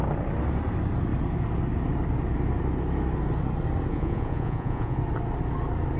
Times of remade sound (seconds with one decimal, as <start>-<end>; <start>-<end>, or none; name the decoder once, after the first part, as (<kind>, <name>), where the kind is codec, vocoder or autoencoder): 3.9-5.0 (vocoder, Vocos)

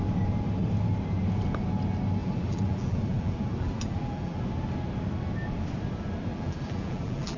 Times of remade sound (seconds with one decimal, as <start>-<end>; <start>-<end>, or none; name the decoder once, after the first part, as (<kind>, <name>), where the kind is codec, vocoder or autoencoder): 2.2-4.4 (vocoder, BigVGAN v2); 6.3-7.4

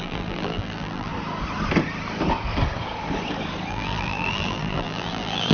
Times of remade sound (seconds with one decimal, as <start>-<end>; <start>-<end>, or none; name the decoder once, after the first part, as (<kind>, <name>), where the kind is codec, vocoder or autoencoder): 0.0-1.1 (vocoder, BigVGAN v2); 3.7-5.5

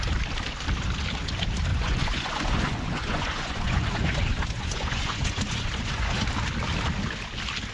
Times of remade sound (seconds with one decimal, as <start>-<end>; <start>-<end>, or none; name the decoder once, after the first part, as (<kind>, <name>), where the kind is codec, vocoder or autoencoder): 1.7-6.3 (vocoder, Vocos)

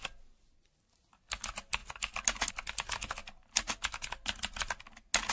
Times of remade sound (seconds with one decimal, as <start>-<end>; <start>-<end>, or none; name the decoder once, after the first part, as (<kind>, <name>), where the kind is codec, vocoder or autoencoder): none

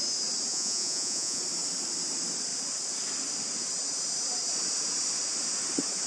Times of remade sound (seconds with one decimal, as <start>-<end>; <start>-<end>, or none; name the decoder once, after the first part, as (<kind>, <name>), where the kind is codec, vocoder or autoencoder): 0.5-1.4 (vocoder, Vocos)

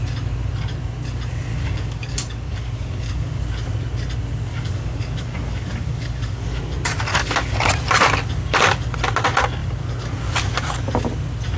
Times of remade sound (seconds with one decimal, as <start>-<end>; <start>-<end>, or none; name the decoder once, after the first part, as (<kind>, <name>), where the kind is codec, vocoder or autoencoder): 1.5-3.4 (codec, DAC); 4.5-6.6; 7.1-7.7

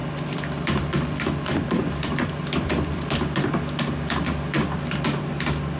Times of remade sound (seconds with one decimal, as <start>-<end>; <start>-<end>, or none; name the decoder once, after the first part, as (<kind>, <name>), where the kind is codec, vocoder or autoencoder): 0.0-3.5 (vocoder, BigVGAN v2)